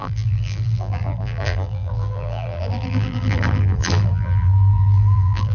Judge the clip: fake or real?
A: fake